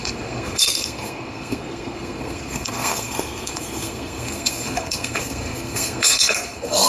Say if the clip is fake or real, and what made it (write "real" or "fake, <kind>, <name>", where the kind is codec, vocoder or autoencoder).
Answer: fake, codec, SNAC